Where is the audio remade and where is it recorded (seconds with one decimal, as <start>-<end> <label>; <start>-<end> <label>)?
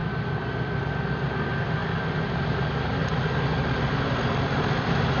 0.0-5.2 recorded